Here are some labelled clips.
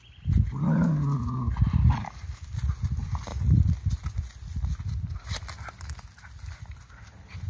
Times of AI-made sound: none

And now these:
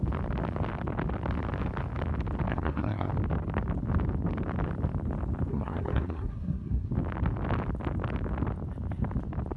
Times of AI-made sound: 2.5-3.1 (codec, SNAC); 5.5-6.9

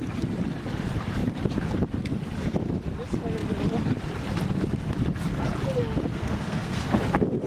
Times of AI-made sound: 6.1-6.9 (codec, SNAC)

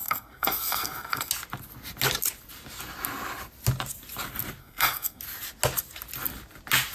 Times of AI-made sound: 0.0-1.3 (codec, SNAC); 4.6-5.2

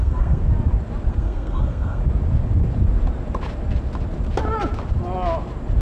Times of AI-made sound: 0.0-0.4 (codec, SNAC); 1.1-2.0

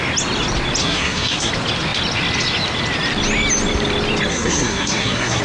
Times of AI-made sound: 0.8-1.5 (codec, SNAC); 4.3-5.4